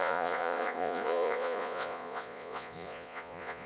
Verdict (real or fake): fake